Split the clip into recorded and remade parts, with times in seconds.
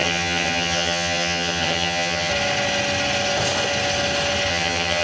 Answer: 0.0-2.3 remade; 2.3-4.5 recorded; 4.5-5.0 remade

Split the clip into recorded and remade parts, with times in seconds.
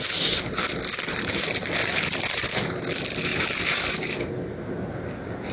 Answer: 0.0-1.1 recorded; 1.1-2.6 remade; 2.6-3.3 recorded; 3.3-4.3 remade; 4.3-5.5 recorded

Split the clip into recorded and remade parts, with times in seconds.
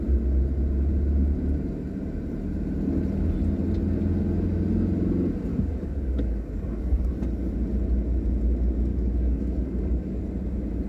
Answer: 0.0-5.5 recorded; 5.5-7.1 remade; 7.1-8.9 recorded; 8.9-10.2 remade; 10.2-10.9 recorded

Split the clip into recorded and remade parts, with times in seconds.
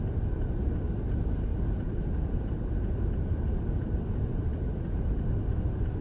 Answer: 0.0-6.0 recorded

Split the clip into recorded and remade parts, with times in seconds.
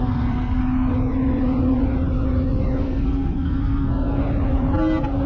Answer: 0.0-0.6 remade; 0.6-2.8 recorded; 2.8-4.2 remade; 4.2-5.3 recorded